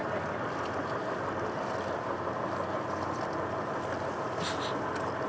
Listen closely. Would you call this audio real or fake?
real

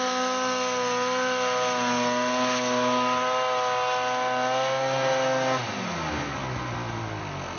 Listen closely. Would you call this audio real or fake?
real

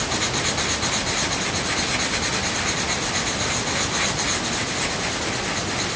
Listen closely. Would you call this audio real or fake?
real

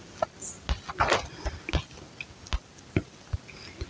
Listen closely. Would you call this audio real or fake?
real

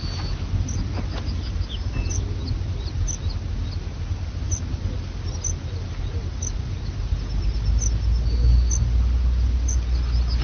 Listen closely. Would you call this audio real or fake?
real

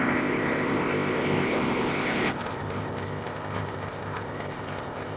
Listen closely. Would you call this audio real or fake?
fake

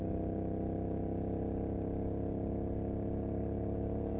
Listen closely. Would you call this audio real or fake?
real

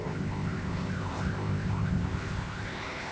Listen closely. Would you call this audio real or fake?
fake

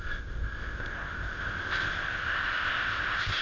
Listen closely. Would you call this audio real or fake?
fake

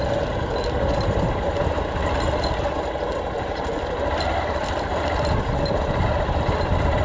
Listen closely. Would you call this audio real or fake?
real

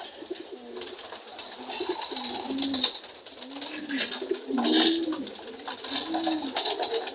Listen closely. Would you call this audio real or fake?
real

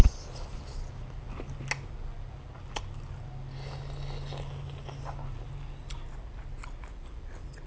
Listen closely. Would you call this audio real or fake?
real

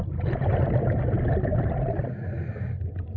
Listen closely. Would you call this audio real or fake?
real